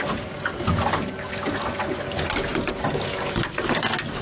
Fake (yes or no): no